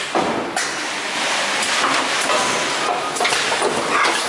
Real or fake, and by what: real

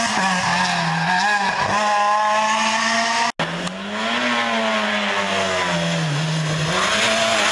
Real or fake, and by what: real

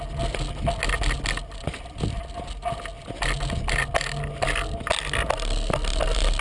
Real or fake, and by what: real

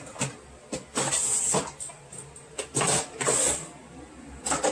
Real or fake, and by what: real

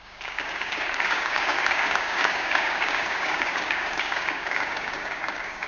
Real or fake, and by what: fake, codec, DAC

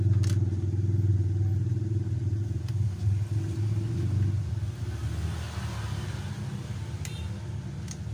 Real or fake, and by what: real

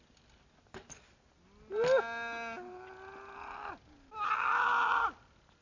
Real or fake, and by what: real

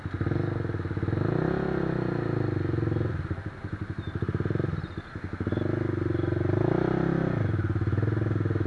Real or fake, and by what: real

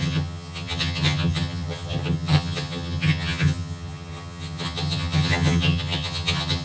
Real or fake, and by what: fake, vocoder, HiFi-GAN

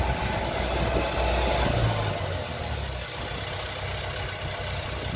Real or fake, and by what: real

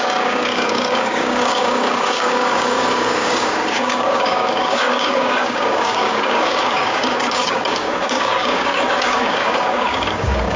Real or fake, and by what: fake, codec, DAC